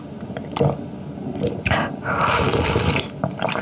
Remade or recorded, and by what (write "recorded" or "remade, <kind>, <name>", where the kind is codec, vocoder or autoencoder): recorded